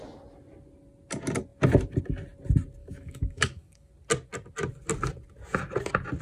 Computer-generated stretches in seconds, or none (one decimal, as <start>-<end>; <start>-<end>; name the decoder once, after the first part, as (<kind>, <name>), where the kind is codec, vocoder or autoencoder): 2.8-3.9 (codec, DAC)